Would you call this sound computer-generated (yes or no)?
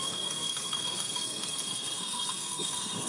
yes